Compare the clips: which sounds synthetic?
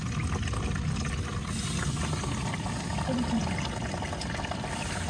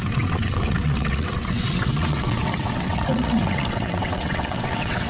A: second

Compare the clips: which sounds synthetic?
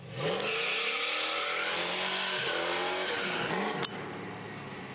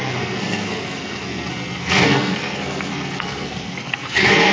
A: second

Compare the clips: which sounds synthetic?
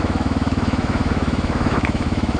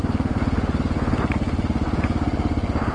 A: first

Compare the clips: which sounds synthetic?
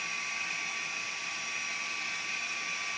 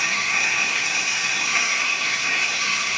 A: second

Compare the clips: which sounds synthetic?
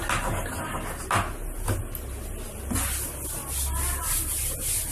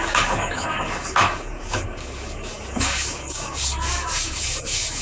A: second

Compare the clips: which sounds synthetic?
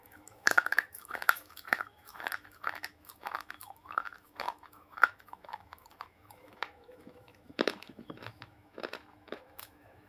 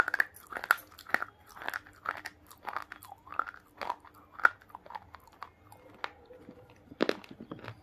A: first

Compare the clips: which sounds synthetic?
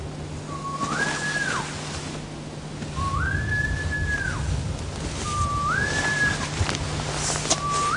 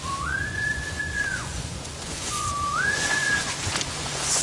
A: second